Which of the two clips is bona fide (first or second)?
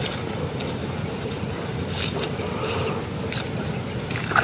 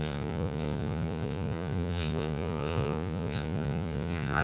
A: first